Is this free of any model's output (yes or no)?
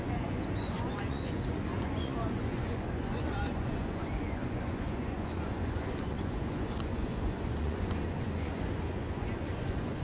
no